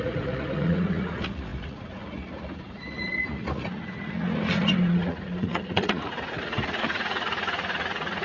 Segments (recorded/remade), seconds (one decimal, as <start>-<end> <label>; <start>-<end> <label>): 0.0-8.2 remade